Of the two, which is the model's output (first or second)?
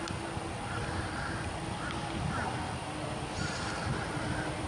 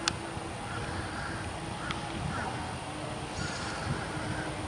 first